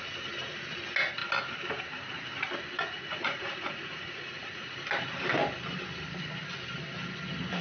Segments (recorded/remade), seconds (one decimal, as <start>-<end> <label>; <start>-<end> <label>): 0.0-2.9 recorded; 2.9-4.7 remade; 4.7-7.6 recorded